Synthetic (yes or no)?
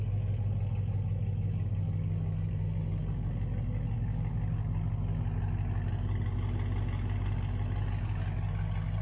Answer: no